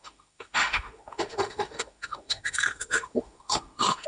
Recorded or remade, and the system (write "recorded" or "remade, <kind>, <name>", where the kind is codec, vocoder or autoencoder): remade, autoencoder, DAC-VAE